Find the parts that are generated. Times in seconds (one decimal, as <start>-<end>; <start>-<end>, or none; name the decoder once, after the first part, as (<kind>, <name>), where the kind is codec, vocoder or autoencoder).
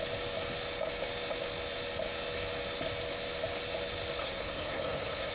4.2-5.3 (codec, SNAC)